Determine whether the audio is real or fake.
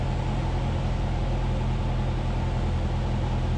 real